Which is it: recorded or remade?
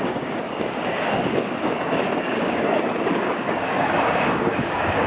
remade